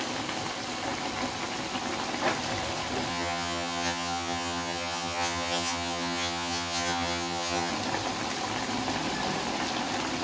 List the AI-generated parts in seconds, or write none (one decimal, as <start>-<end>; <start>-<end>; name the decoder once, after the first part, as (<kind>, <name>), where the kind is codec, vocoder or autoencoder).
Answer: 3.1-7.7 (vocoder, HiFi-GAN)